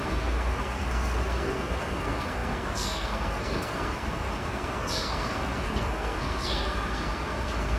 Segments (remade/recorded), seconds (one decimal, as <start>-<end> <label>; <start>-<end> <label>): 0.0-7.8 remade